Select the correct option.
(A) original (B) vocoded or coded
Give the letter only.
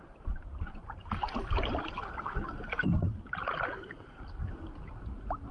A